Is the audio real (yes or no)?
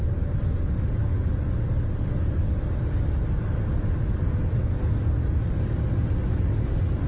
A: yes